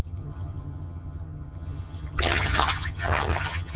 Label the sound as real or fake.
fake